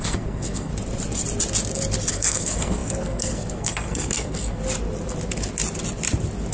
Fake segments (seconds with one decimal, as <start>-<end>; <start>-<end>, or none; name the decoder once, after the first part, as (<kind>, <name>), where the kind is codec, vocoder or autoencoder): 0.0-0.7 (codec, SNAC); 2.1-4.6

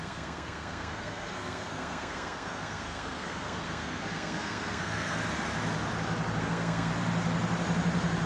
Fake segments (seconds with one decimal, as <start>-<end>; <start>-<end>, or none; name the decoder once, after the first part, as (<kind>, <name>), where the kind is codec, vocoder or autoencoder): 0.0-5.2 (codec, SNAC); 6.4-6.9